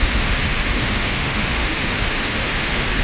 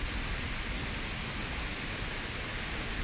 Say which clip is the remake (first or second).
first